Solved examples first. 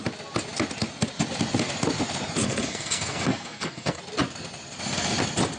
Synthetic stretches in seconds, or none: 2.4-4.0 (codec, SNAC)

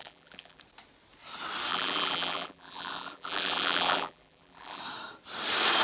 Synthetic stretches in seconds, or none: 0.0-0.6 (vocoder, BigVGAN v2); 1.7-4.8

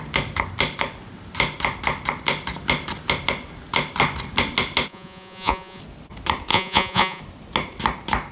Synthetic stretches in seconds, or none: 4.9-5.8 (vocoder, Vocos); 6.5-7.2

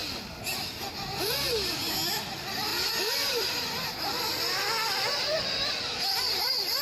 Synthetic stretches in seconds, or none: none

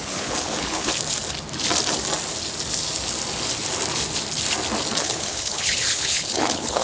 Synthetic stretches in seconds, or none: 0.0-0.9 (codec, HILCodec); 5.0-6.8

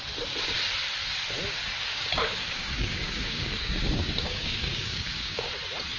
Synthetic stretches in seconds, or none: 1.9-5.5 (codec, DAC)

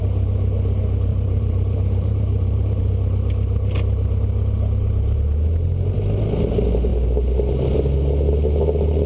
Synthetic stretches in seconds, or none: 1.1-2.9 (vocoder, BigVGAN v2)

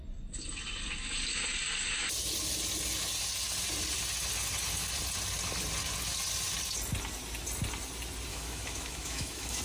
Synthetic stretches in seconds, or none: 8.3-9.6 (autoencoder, DAC-VAE)